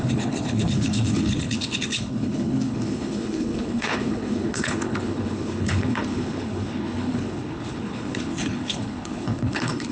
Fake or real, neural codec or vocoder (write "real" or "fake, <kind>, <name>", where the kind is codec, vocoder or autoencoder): fake, codec, HILCodec